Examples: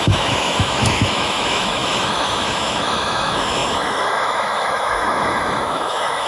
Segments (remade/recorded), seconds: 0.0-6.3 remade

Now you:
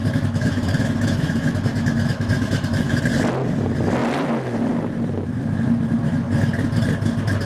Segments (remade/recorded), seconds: 0.0-3.0 remade; 3.0-7.5 recorded

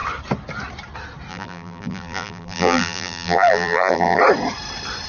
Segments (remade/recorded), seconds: 0.0-1.3 recorded; 1.3-4.2 remade; 4.2-5.1 recorded

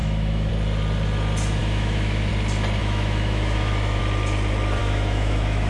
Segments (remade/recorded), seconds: 0.0-0.5 remade; 0.5-1.6 recorded; 1.6-2.3 remade; 2.3-2.8 recorded; 2.8-4.0 remade; 4.0-4.8 recorded; 4.8-5.7 remade

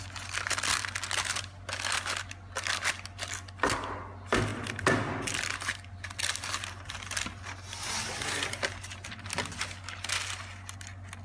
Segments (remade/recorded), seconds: 0.0-11.2 recorded

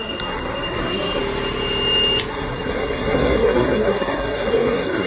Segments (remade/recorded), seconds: 0.0-1.2 remade; 1.2-2.3 recorded; 2.3-5.1 remade

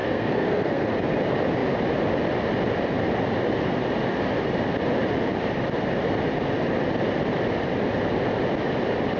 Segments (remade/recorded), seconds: 0.0-0.9 remade; 0.9-9.2 recorded